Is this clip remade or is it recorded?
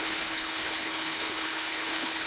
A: remade